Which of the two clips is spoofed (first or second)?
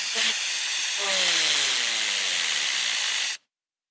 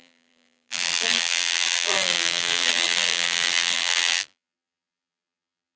second